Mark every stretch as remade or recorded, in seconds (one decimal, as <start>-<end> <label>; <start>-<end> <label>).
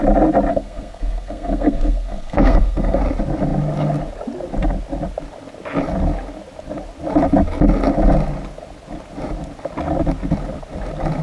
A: 0.0-0.5 recorded; 0.5-3.0 remade; 3.0-11.2 recorded